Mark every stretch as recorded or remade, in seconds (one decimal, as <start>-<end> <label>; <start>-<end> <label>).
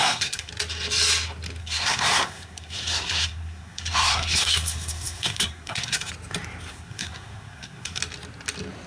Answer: 0.0-0.5 remade; 0.5-1.6 recorded; 1.6-6.1 remade; 6.1-6.7 recorded; 6.7-8.0 remade; 8.0-8.9 recorded